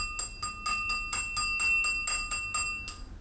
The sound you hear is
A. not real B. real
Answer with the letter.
B